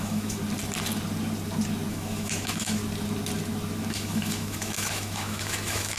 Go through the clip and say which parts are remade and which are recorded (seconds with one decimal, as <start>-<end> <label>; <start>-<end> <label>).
0.0-0.4 remade; 0.4-1.9 recorded; 1.9-2.8 remade; 2.8-3.9 recorded; 3.9-6.0 remade